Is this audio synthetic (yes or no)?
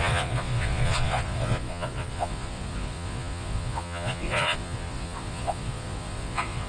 yes